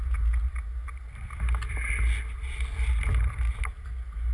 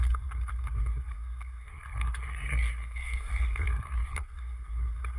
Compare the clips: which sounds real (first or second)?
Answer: first